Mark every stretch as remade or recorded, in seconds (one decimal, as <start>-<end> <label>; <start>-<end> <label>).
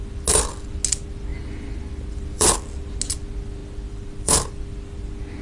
0.0-1.3 recorded; 1.3-2.7 remade; 2.7-3.6 recorded; 3.6-4.6 remade; 4.6-5.4 recorded